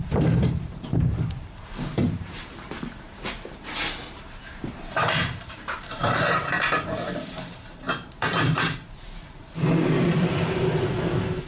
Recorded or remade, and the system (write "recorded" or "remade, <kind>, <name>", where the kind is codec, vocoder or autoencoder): remade, vocoder, BigVGAN v2